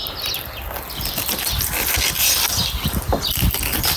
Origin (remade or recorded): recorded